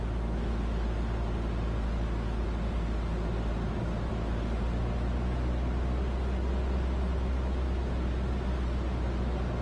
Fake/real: real